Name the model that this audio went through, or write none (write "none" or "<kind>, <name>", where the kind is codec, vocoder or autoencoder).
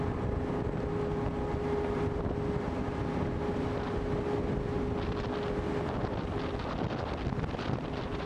none